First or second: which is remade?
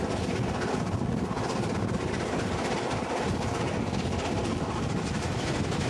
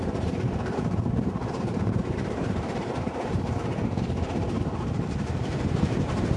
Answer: second